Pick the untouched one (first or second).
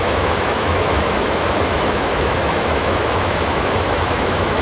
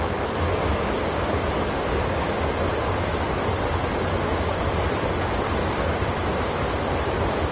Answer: second